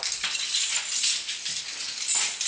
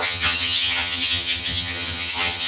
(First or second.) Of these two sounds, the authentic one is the first